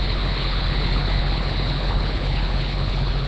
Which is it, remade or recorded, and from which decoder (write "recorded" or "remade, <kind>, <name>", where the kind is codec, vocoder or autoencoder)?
remade, codec, HILCodec